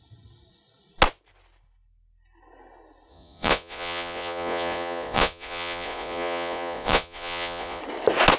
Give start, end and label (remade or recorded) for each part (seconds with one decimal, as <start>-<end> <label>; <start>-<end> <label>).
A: 0.0-3.1 recorded; 3.1-7.8 remade; 7.8-8.4 recorded